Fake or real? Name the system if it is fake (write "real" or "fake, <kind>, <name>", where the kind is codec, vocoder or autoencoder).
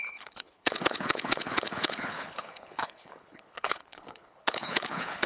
fake, codec, HILCodec